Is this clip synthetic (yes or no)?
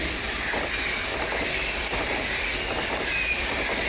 no